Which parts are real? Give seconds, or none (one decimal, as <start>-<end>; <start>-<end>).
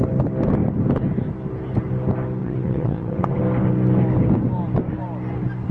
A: 0.0-2.4; 3.4-5.7